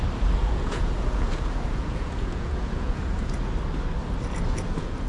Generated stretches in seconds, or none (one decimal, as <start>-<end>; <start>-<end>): 0.4-3.5; 4.3-5.1